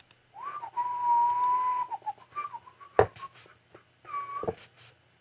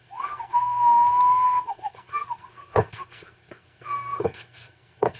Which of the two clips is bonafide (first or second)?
first